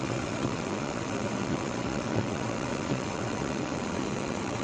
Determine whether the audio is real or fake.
fake